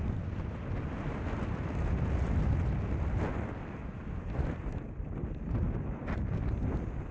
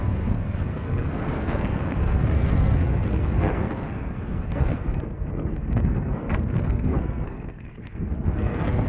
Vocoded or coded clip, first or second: second